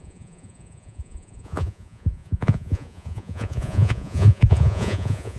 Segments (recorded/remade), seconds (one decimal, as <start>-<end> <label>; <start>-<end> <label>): 0.0-5.4 remade